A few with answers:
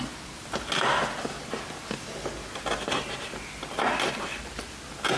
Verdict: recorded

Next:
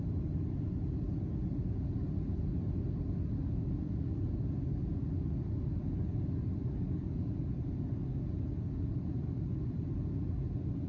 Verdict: recorded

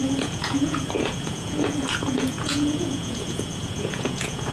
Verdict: remade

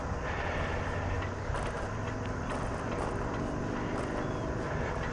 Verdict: recorded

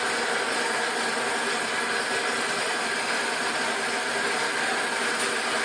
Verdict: recorded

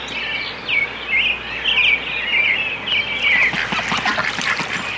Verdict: recorded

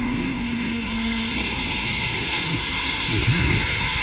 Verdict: remade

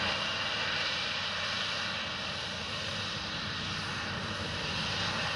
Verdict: recorded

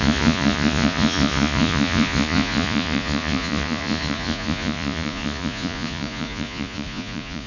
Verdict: remade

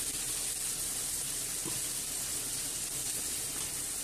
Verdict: recorded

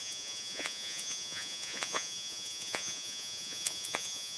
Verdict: remade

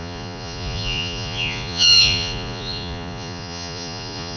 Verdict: remade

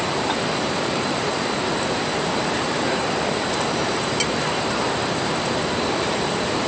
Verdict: remade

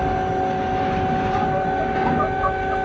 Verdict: recorded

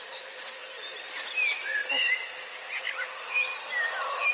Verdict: recorded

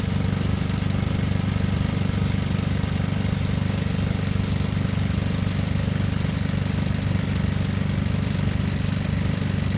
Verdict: recorded